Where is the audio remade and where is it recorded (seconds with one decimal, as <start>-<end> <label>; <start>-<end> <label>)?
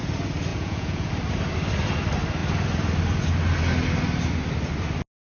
0.0-0.5 recorded; 0.5-1.1 remade; 1.1-5.2 recorded